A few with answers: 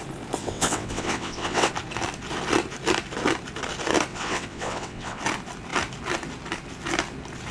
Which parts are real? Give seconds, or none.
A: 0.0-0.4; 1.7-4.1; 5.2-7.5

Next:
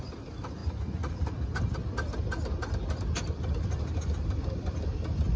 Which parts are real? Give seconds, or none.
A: 0.0-5.4

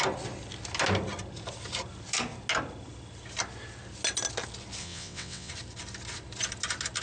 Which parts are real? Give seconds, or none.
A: 0.0-4.8; 5.5-7.0

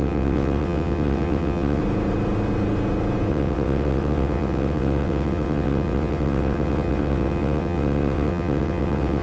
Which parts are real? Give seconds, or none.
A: 1.8-3.3

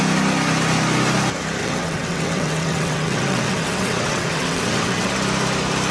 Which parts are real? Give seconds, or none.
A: 0.0-1.6; 5.1-5.9

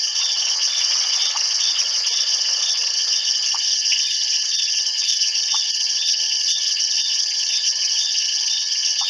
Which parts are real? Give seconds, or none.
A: none

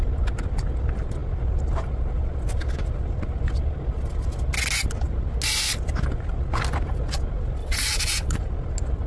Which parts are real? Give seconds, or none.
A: 0.0-7.6; 8.4-9.1

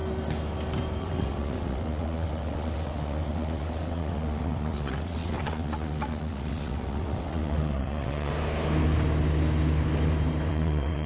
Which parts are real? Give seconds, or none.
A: 0.0-1.0; 8.3-10.5